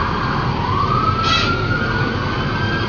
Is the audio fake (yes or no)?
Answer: no